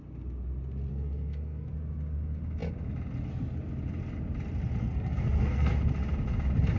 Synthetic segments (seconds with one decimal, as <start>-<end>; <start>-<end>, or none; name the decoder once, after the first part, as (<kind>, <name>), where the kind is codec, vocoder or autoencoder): 0.9-1.7 (codec, SNAC); 4.8-5.7